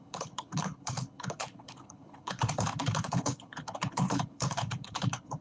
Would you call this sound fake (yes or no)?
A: yes